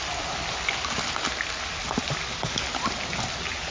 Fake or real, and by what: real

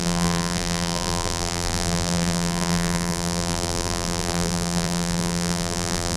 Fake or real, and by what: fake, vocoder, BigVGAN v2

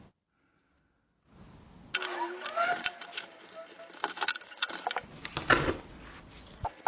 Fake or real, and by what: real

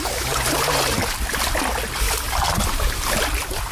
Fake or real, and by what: real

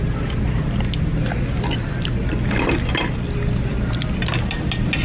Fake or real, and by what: real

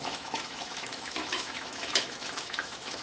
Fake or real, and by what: fake, autoencoder, DAC-VAE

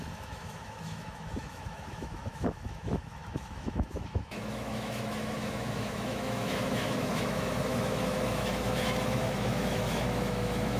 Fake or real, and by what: fake, autoencoder, DAC-VAE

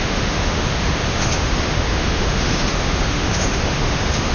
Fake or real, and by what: fake, autoencoder, DAC-VAE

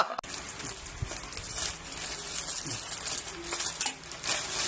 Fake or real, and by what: real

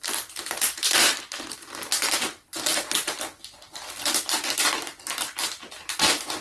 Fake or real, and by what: real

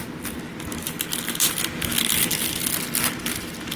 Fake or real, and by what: real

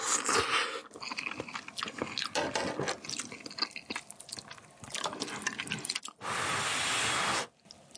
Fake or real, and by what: real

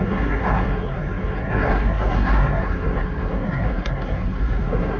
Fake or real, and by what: fake, codec, SNAC